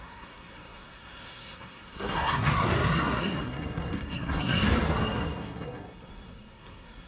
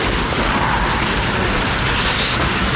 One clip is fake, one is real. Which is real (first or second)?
second